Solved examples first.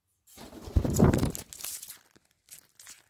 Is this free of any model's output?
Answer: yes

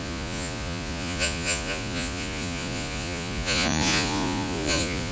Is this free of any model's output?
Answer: no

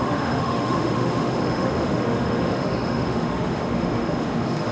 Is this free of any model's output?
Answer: no